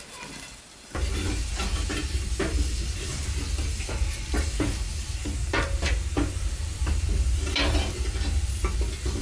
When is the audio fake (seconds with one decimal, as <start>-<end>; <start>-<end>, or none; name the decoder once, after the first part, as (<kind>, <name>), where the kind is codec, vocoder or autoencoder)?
none